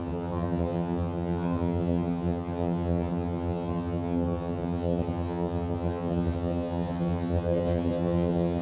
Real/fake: fake